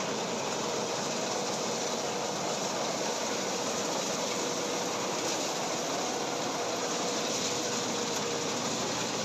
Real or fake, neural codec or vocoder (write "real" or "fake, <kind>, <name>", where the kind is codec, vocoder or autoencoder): real